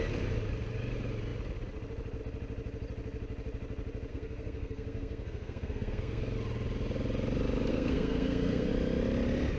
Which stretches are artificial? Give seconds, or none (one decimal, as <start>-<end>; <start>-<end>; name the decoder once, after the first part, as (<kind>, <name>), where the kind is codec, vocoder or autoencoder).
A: 4.1-6.2 (codec, SNAC); 7.7-8.7